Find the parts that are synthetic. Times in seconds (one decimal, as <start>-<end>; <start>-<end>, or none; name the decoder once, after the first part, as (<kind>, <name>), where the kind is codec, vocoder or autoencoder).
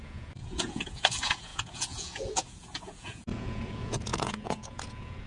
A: 0.0-5.3 (vocoder, Vocos)